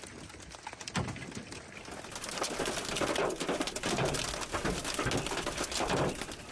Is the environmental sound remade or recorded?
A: recorded